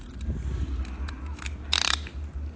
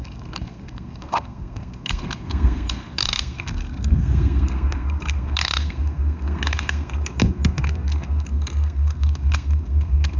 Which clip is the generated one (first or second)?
second